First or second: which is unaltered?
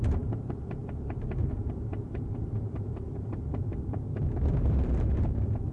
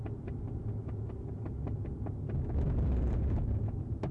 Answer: second